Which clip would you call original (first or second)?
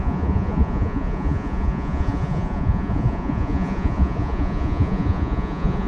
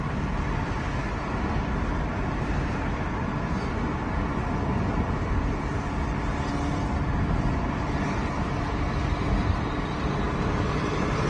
second